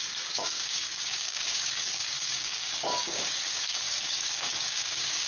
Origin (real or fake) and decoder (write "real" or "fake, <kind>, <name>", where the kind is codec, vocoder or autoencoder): fake, codec, DAC